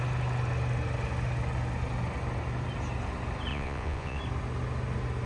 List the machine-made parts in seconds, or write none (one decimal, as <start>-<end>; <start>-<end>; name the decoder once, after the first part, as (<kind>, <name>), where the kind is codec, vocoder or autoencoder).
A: 3.5-4.2 (vocoder, Vocos)